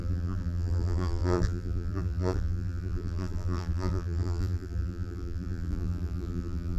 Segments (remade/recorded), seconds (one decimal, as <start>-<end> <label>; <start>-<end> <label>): 0.0-6.8 remade